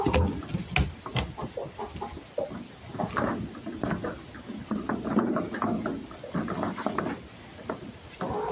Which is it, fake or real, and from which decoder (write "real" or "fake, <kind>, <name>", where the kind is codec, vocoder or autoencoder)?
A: real